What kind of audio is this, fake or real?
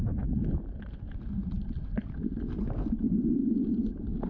real